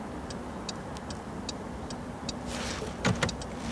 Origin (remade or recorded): recorded